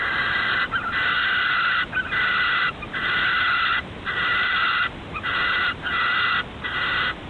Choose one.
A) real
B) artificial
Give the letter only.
A